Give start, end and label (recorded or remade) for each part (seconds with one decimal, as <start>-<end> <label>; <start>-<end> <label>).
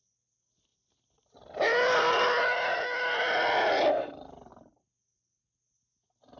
0.0-0.7 recorded; 0.7-4.5 remade; 4.5-6.4 recorded